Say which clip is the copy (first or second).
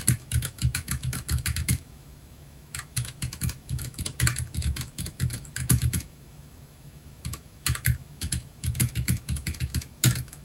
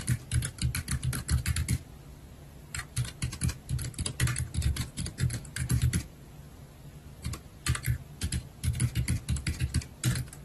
first